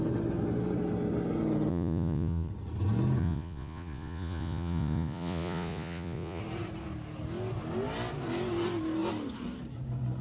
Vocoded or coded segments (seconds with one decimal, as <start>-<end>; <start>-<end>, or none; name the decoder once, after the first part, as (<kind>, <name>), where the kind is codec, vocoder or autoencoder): 1.7-2.5 (vocoder, Vocos); 3.2-6.4